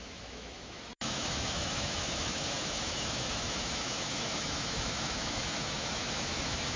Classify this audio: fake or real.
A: fake